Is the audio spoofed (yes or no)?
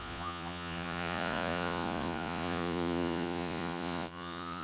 yes